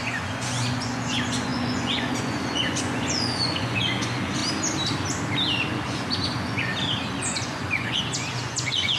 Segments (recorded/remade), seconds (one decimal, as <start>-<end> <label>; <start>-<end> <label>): 0.0-4.4 remade; 4.4-5.7 recorded; 5.7-6.7 remade; 6.7-7.2 recorded; 7.2-9.0 remade